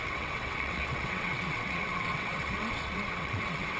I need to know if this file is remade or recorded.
remade